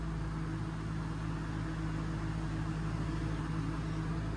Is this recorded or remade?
recorded